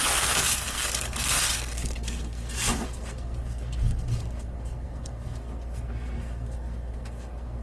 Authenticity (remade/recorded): remade